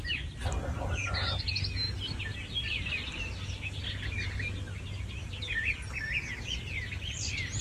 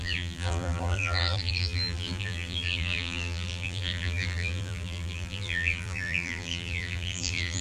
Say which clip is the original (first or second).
first